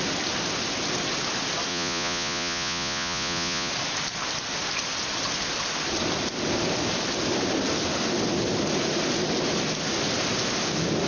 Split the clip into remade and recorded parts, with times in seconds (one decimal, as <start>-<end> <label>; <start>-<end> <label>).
0.0-1.7 recorded; 1.7-3.7 remade; 3.7-11.1 recorded